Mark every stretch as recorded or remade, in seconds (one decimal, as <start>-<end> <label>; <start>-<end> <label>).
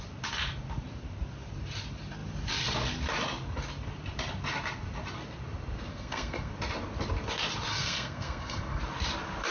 0.0-5.9 recorded; 5.9-6.5 remade; 6.5-7.7 recorded; 7.7-8.8 remade; 8.8-9.5 recorded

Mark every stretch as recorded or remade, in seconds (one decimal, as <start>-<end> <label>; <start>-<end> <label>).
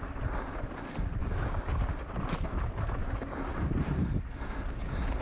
0.0-1.2 recorded; 1.2-1.8 remade; 1.8-3.0 recorded; 3.0-3.7 remade; 3.7-5.2 recorded